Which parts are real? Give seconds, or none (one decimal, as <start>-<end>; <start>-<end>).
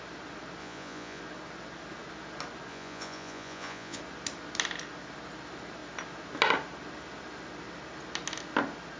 0.0-0.6; 1.2-2.7; 4.0-9.0